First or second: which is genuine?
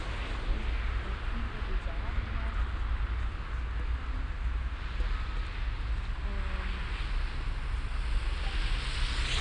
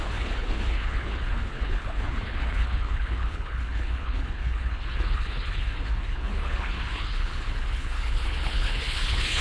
first